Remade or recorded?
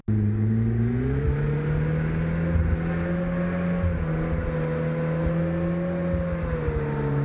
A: recorded